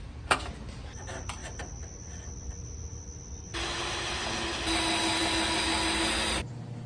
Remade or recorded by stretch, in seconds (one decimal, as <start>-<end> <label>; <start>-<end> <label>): 0.0-6.9 recorded